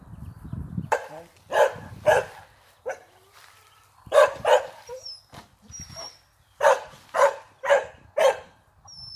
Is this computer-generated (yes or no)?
yes